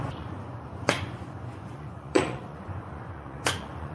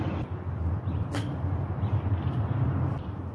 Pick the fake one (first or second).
first